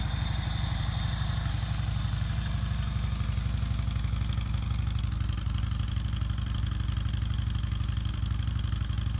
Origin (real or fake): real